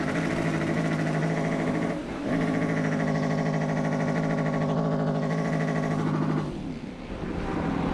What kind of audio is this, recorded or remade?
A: recorded